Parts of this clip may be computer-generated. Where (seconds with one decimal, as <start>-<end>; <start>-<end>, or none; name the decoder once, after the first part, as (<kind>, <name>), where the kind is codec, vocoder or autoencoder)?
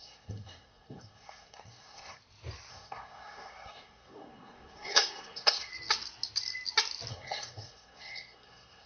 0.0-2.2 (codec, SNAC); 2.7-5.7; 7.1-8.9